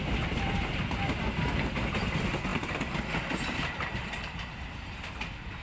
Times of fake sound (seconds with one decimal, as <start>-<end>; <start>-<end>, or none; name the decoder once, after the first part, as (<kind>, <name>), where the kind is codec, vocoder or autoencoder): 0.0-0.6 (vocoder, BigVGAN v2)